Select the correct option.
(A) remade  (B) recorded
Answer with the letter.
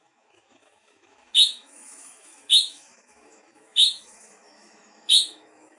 A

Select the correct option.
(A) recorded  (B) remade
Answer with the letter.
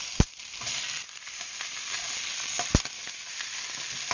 A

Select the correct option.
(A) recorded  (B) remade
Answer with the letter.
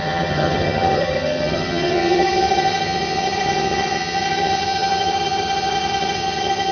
B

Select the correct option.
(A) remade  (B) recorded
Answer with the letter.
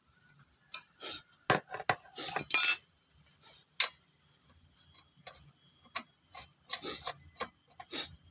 B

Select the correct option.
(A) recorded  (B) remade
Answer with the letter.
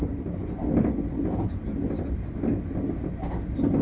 A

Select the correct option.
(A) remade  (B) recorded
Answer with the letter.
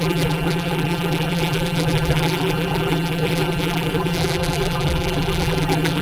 A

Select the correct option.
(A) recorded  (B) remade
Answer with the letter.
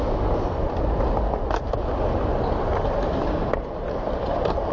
A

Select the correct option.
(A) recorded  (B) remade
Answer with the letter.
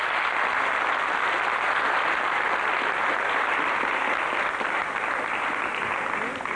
A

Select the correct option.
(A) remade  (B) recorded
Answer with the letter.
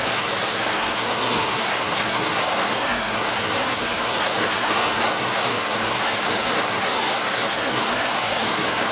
A